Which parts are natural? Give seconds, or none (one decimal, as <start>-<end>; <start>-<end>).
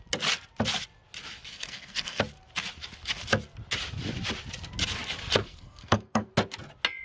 0.0-1.5; 2.2-5.4; 6.3-7.0